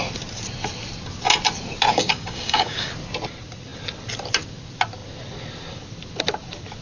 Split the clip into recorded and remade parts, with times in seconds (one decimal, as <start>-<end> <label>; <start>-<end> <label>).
0.0-1.9 recorded; 1.9-2.9 remade; 2.9-6.8 recorded